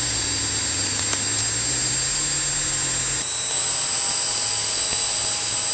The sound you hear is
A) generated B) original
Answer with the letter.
B